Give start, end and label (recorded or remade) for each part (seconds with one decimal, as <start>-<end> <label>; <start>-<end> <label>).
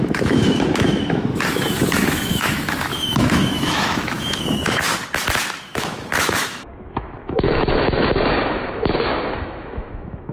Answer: 0.0-4.9 remade; 4.9-5.6 recorded; 5.6-10.3 remade